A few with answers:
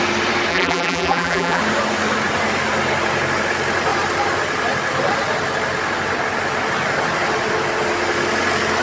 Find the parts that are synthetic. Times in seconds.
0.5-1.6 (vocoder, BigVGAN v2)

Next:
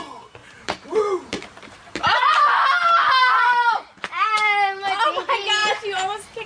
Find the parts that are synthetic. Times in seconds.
0.4-2.2 (vocoder, BigVGAN v2)

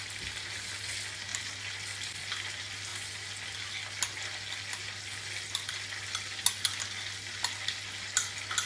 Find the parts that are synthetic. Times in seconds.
none

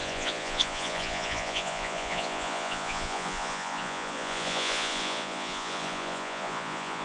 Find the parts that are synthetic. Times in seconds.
0.0-7.0 (vocoder, Vocos)

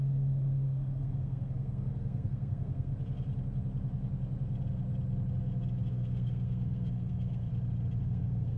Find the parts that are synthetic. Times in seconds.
0.0-2.9 (codec, SNAC); 5.9-7.5; 8.0-8.6

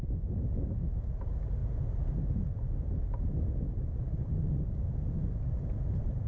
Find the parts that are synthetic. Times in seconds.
none